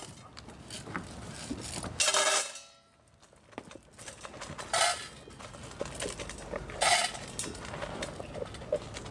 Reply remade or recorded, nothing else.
recorded